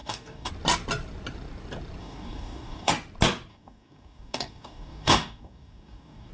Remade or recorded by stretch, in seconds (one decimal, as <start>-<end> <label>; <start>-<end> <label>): 0.0-0.5 remade; 0.5-2.0 recorded; 2.0-2.9 remade; 2.9-3.5 recorded; 3.5-6.3 remade